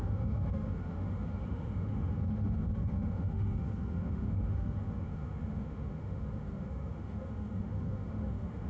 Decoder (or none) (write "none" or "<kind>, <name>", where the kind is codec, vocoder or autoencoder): autoencoder, DAC-VAE